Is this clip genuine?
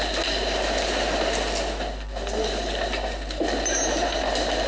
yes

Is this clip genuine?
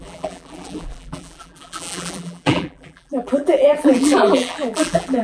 no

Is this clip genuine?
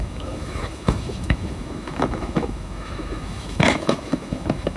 no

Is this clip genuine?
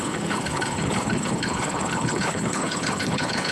no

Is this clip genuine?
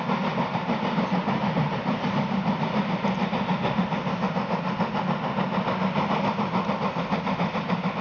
yes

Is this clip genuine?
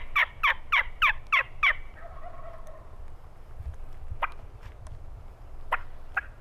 yes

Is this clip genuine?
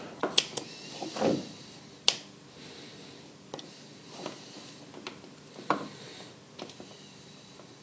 yes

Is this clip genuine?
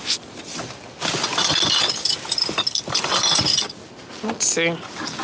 yes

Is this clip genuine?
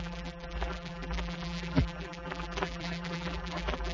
no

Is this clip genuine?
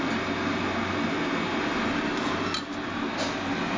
yes